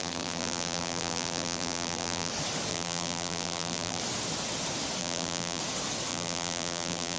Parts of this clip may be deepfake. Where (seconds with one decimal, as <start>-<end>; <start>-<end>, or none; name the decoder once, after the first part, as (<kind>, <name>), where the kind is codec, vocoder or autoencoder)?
0.0-2.3 (vocoder, BigVGAN v2); 2.7-4.0; 5.0-5.6; 6.1-7.2